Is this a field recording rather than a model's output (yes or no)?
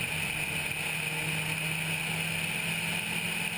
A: yes